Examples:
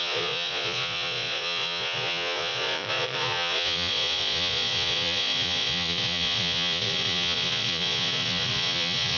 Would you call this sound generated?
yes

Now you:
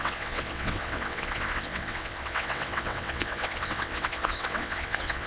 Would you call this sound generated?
yes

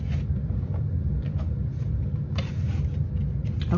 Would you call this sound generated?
no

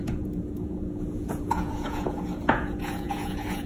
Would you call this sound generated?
yes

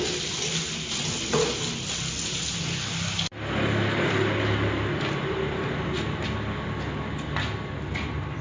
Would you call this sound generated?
no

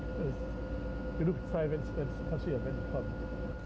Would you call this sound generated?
no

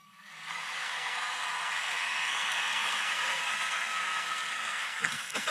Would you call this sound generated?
yes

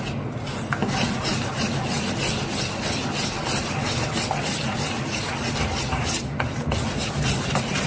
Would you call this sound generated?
no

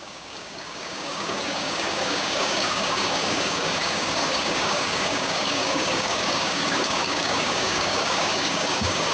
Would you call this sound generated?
yes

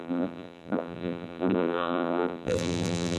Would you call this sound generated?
yes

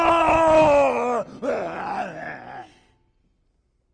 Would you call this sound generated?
no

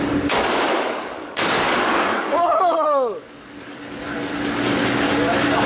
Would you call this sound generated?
yes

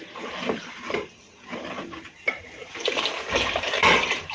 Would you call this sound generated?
yes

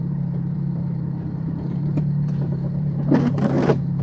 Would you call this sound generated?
yes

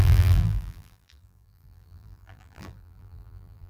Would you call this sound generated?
yes